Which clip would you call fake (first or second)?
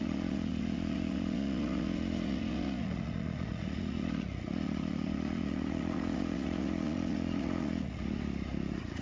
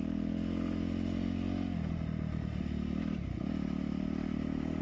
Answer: first